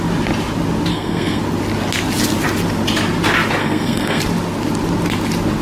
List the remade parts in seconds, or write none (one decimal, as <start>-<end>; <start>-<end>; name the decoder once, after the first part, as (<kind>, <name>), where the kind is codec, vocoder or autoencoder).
0.9-1.4 (codec, SNAC); 3.6-4.2